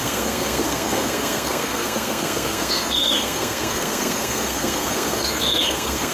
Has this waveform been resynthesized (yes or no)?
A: yes